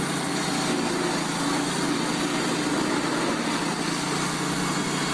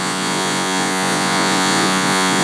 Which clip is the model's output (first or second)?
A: second